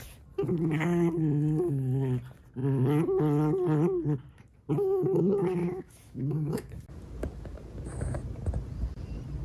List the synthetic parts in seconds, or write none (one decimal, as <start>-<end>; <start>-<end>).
5.6-6.7